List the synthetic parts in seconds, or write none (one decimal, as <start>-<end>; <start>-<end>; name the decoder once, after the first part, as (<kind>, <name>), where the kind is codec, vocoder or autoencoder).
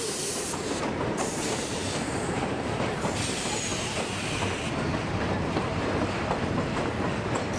0.0-3.7 (vocoder, BigVGAN v2)